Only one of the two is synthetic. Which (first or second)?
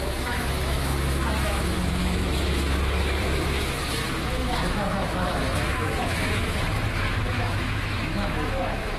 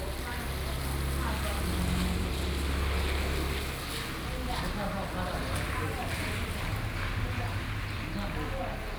first